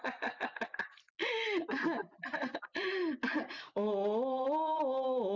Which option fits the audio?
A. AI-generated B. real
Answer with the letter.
B